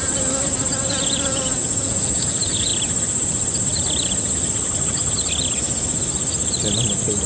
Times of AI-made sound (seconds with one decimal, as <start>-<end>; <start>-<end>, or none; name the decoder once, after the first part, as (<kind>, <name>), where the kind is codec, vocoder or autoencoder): 0.9-2.7 (vocoder, Vocos)